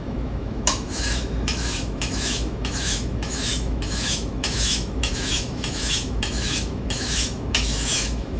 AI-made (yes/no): yes